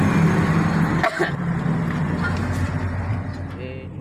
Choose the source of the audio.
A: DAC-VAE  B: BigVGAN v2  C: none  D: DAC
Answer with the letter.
C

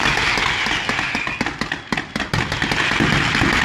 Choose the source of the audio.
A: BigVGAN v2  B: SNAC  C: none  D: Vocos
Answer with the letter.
C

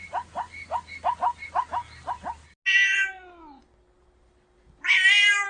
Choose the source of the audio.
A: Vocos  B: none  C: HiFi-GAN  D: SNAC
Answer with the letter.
B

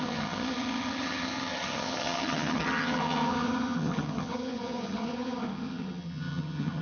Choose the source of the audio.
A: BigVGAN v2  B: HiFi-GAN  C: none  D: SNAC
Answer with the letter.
B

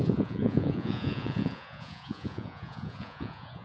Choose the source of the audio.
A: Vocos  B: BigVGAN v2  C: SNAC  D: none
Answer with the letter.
A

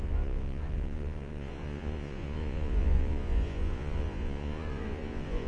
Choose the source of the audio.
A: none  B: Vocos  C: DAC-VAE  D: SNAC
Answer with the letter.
B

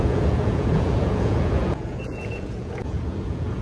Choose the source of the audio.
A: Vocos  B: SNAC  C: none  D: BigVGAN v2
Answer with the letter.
A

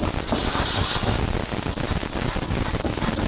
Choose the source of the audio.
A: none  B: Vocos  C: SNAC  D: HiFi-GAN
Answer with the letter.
A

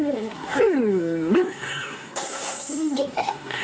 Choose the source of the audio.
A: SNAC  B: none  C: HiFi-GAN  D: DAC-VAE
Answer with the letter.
A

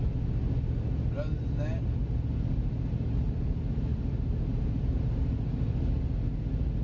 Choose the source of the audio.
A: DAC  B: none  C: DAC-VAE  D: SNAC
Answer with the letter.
B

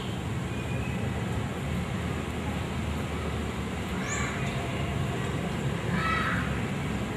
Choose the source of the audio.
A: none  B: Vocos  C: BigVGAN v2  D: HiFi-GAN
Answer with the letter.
A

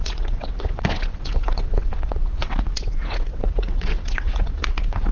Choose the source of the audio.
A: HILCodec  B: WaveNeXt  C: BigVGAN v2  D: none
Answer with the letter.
B